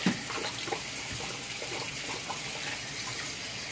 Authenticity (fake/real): real